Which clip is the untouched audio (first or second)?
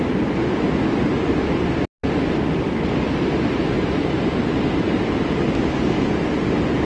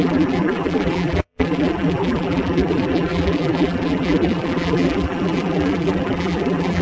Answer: first